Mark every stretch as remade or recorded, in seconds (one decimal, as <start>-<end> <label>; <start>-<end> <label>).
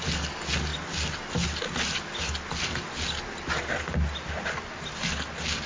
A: 0.0-5.7 recorded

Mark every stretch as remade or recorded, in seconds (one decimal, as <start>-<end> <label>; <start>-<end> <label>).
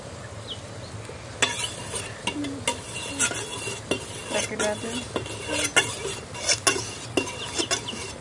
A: 0.0-8.2 recorded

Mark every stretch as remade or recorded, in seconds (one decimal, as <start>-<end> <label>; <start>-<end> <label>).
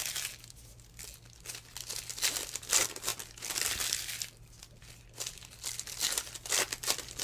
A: 0.0-7.2 recorded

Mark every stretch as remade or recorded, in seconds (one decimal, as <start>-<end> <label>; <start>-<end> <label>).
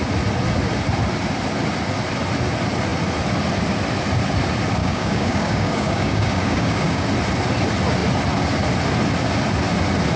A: 0.0-4.8 recorded; 4.8-7.1 remade; 7.1-10.2 recorded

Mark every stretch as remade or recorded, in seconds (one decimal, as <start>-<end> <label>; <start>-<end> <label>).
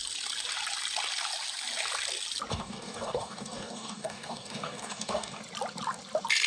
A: 0.0-2.5 recorded; 2.5-5.4 remade; 5.4-6.5 recorded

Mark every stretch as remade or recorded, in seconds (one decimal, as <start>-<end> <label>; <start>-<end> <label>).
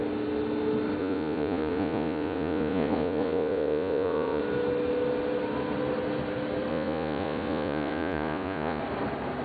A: 0.0-1.0 recorded; 1.0-4.4 remade; 4.4-6.7 recorded; 6.7-8.8 remade; 8.8-9.4 recorded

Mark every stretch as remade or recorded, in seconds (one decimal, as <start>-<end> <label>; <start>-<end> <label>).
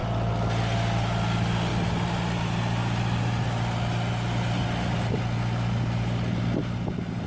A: 0.0-7.3 recorded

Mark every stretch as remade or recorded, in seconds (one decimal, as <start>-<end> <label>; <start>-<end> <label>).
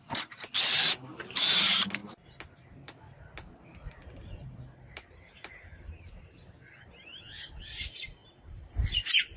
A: 0.0-9.4 recorded